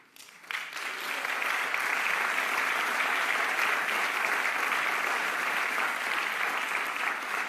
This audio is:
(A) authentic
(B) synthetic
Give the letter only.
B